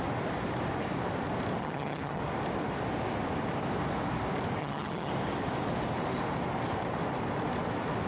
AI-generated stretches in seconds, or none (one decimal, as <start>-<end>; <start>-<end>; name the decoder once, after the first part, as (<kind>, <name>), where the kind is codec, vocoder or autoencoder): 1.6-2.2 (vocoder, HiFi-GAN); 4.6-5.1